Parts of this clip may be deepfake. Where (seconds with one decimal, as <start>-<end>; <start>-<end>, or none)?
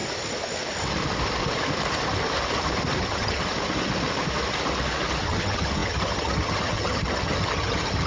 3.0-3.4; 5.2-8.1